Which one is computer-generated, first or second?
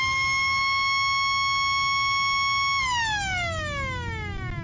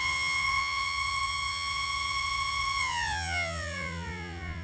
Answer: second